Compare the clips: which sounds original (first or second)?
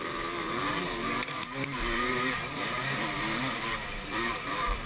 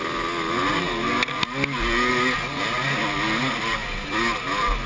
second